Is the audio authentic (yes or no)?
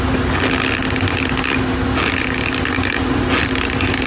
yes